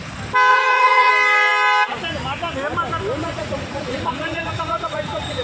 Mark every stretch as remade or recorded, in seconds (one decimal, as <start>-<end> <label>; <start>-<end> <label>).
0.0-0.5 recorded; 0.5-1.1 remade; 1.1-3.2 recorded; 3.2-5.4 remade